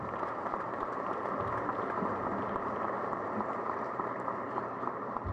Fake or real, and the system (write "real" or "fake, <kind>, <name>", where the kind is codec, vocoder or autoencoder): fake, vocoder, BigVGAN v2